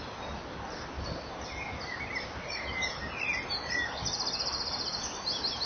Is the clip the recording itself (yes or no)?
yes